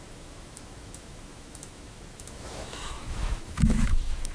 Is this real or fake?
fake